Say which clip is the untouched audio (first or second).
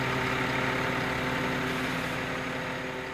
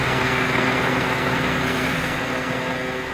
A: first